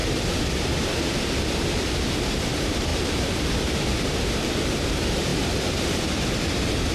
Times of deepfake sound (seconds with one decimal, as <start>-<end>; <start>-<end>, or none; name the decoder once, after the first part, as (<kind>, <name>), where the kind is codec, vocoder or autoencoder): 0.0-6.9 (vocoder, BigVGAN v2)